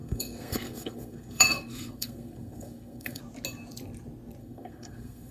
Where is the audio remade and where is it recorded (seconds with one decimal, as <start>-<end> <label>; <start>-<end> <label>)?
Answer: 0.0-3.2 remade; 3.2-4.4 recorded; 4.4-5.3 remade